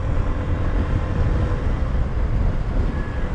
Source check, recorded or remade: recorded